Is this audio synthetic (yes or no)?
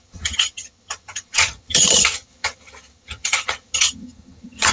yes